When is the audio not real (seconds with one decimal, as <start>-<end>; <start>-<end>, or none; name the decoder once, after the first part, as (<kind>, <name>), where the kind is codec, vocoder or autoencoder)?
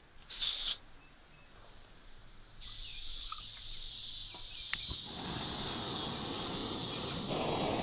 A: 2.9-3.4 (autoencoder, DAC-VAE)